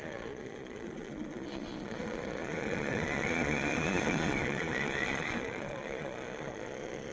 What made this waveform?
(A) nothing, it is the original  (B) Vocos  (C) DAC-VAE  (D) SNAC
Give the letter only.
B